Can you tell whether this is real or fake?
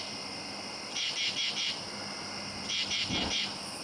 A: fake